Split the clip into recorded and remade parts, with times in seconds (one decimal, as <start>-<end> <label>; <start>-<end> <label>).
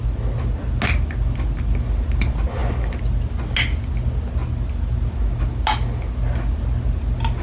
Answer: 0.0-7.4 recorded